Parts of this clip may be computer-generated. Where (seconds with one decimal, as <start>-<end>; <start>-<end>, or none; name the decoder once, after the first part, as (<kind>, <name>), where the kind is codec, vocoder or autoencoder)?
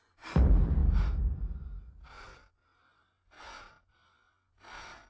none